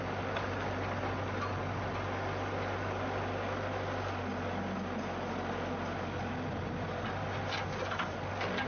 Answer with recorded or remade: recorded